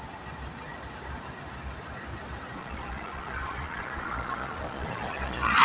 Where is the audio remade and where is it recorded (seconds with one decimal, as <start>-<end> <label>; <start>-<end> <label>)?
0.0-2.6 recorded; 2.6-5.6 remade